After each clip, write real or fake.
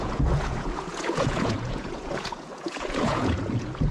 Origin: fake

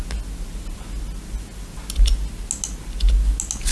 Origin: real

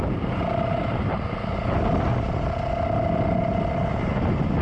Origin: real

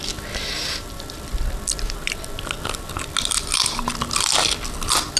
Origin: real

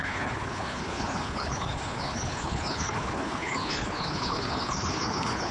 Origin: fake